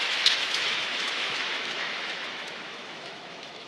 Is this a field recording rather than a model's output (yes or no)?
no